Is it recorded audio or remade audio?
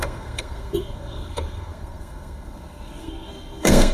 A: remade